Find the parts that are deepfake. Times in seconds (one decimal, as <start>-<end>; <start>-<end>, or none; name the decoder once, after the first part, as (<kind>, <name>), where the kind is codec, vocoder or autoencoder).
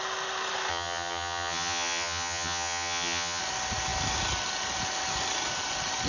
0.7-3.4 (vocoder, HiFi-GAN)